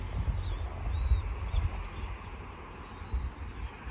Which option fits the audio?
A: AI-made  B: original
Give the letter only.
B